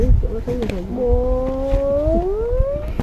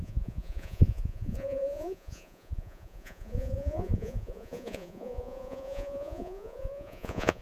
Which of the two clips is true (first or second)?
first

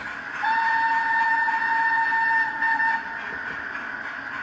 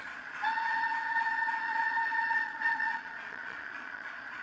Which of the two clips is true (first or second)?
first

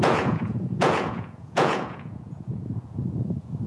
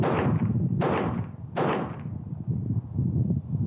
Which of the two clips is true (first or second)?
second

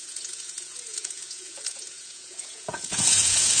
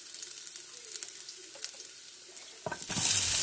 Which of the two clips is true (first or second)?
second